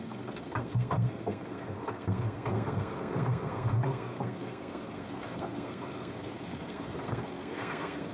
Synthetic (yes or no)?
yes